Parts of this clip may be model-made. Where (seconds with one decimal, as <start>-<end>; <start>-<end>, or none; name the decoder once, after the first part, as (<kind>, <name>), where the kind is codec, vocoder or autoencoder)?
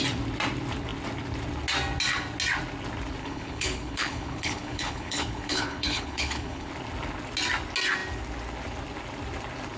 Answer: 3.2-6.7 (codec, HILCodec)